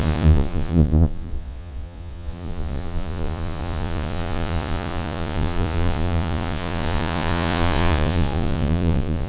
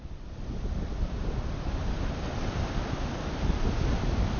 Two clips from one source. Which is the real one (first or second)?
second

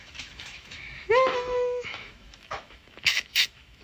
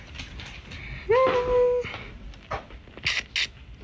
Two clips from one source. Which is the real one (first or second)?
second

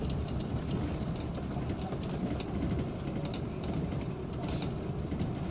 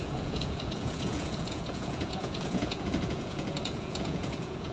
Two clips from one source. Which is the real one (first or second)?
first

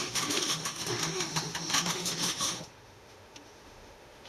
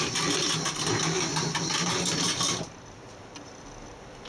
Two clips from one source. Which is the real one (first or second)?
second